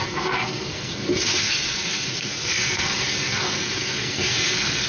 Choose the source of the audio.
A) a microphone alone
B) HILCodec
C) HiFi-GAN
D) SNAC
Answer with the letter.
D